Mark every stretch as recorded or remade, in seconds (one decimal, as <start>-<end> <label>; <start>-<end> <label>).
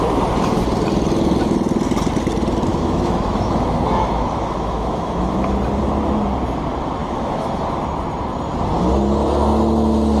0.0-2.7 recorded; 2.7-5.6 remade; 5.6-7.0 recorded; 7.0-7.5 remade; 7.5-10.2 recorded